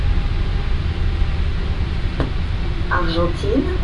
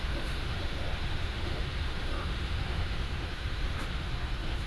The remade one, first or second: second